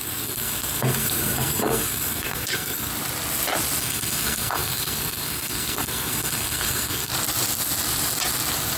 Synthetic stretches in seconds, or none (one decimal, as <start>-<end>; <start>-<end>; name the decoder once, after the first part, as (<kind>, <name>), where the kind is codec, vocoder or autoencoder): 0.0-2.9 (codec, SNAC); 3.8-7.1